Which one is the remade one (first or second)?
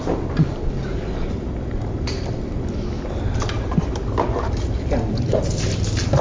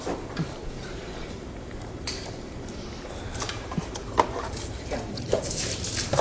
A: second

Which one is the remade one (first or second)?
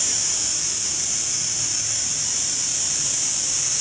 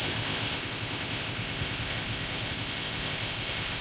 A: second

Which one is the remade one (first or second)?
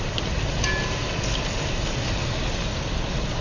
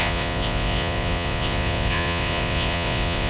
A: second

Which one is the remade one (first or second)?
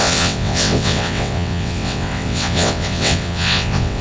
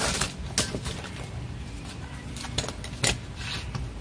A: first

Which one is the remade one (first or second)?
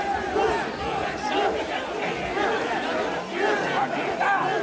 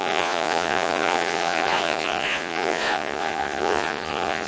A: second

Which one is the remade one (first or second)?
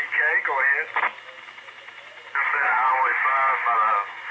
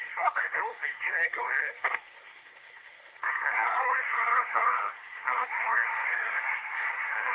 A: second